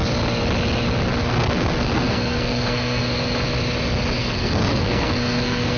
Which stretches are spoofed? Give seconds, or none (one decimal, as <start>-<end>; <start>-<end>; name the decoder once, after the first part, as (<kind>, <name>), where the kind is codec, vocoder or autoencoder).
1.2-3.0 (codec, SNAC); 4.2-5.8